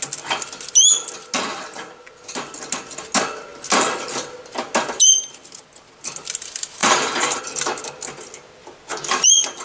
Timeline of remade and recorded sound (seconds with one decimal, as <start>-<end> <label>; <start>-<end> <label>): 0.0-6.8 recorded; 6.8-7.4 remade; 7.4-8.9 recorded; 8.9-9.6 remade